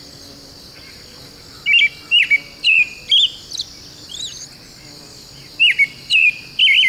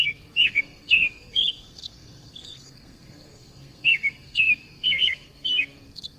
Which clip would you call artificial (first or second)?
second